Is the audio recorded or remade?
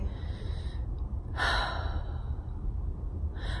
recorded